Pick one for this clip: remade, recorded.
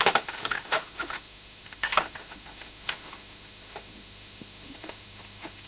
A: remade